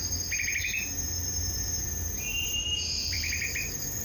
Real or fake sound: fake